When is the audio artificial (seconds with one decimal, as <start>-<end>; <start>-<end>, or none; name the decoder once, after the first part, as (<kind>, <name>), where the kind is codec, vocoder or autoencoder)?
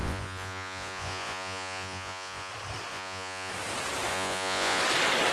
0.0-2.5 (vocoder, Vocos); 2.9-3.5; 4.1-4.8